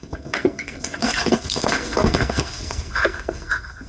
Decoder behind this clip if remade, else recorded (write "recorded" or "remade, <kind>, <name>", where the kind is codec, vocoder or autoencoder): remade, codec, SNAC